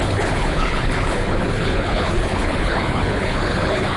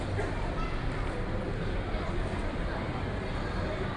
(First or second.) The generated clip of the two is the first